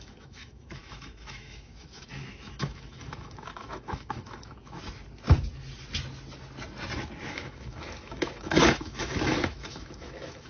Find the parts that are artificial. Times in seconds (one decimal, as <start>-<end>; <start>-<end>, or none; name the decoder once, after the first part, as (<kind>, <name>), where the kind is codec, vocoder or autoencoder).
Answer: 0.0-4.8 (autoencoder, DAC-VAE); 7.3-10.5